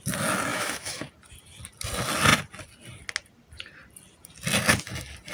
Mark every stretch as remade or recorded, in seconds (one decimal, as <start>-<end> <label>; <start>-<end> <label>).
0.0-0.5 recorded; 0.5-1.1 remade; 1.1-5.3 recorded